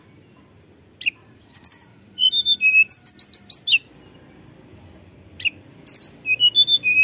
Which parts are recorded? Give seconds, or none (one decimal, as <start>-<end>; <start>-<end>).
0.0-1.2; 2.3-7.0